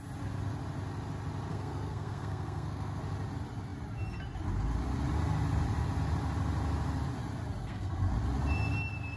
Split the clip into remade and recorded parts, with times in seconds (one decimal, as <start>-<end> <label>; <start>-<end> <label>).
0.0-1.5 recorded; 1.5-3.0 remade; 3.0-7.6 recorded; 7.6-8.1 remade; 8.1-9.2 recorded

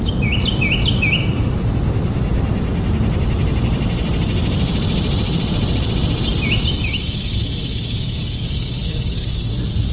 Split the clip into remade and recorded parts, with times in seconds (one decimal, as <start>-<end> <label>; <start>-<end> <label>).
0.0-6.7 recorded; 6.7-9.5 remade; 9.5-9.9 recorded